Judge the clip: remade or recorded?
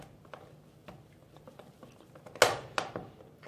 recorded